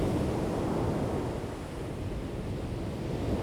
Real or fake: real